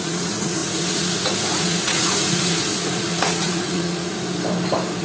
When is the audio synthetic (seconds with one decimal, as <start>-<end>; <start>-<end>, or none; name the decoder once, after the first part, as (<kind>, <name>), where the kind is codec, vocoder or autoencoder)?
0.0-4.1 (vocoder, Vocos)

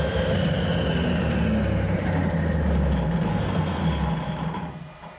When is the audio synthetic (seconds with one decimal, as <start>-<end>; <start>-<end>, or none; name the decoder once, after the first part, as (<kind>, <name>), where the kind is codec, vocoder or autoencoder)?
0.0-0.4 (codec, SNAC); 3.3-3.8

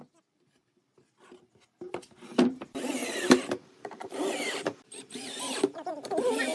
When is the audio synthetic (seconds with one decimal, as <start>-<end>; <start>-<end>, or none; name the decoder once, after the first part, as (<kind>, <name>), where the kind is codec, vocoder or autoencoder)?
3.0-5.9 (vocoder, BigVGAN v2)

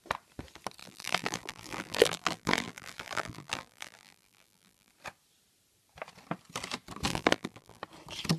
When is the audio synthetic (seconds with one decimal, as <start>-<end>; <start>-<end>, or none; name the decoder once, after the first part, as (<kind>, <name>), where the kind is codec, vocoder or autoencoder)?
0.8-4.9 (vocoder, BigVGAN v2); 7.1-7.8

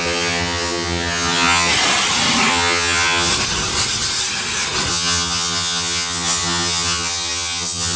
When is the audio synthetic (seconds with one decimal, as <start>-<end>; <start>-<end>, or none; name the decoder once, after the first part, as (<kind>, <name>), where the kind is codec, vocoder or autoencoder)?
0.0-1.7 (vocoder, HiFi-GAN); 2.5-3.3; 4.9-8.0

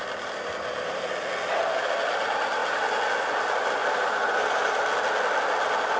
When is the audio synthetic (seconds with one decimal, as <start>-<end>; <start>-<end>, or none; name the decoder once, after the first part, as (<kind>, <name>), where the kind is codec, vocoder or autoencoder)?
0.0-1.1 (vocoder, BigVGAN v2); 3.8-4.7